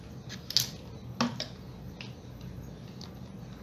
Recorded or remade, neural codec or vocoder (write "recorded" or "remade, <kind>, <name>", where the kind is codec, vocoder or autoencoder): recorded